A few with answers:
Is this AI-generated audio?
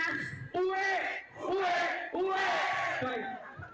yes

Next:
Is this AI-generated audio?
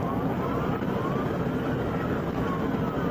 no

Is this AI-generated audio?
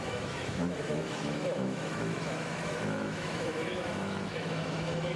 yes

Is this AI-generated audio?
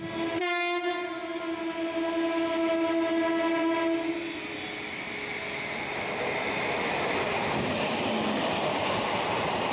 no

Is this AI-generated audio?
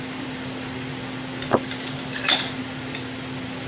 no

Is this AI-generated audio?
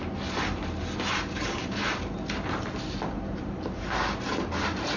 no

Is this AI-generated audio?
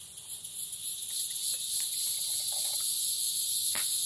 yes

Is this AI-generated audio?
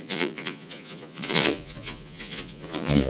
yes